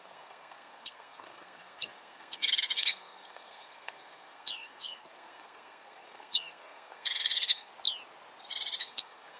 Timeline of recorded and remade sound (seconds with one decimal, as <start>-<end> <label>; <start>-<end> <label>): 0.0-7.7 remade; 7.7-8.8 recorded; 8.8-9.4 remade